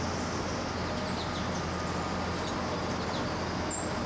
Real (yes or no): yes